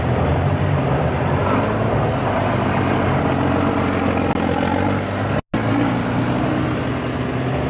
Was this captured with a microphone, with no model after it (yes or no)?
yes